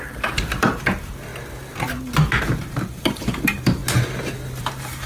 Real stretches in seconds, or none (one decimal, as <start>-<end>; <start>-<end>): 1.3-2.4; 3.8-4.6